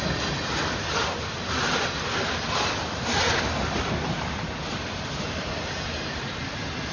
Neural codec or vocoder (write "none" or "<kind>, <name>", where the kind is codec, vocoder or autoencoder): none